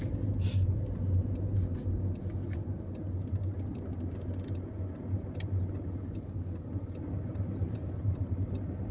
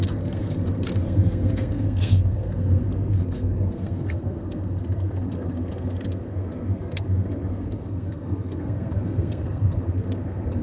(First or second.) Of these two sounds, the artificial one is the second